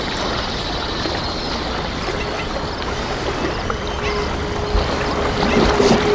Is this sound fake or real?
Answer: real